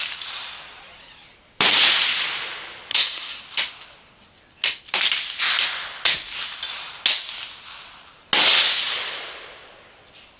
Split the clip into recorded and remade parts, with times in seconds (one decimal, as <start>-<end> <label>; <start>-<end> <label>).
0.0-2.9 recorded; 2.9-3.4 remade; 3.4-10.4 recorded